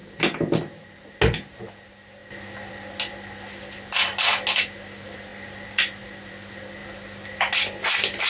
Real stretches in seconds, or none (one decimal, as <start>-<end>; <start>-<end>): 0.0-8.3